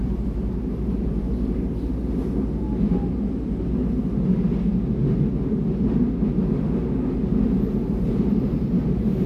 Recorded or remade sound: recorded